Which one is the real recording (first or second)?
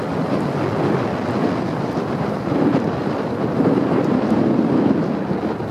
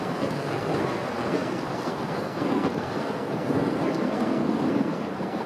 first